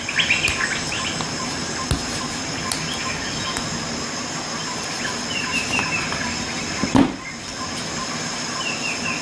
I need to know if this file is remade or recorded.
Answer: recorded